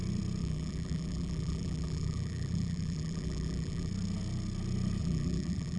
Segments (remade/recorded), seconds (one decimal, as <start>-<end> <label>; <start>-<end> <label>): 0.0-0.4 recorded; 0.4-3.9 remade; 3.9-5.0 recorded; 5.0-5.8 remade

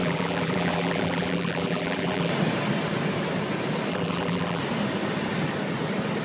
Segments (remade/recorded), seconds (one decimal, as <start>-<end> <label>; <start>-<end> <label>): 0.0-2.3 remade; 2.3-3.9 recorded; 3.9-4.6 remade; 4.6-6.2 recorded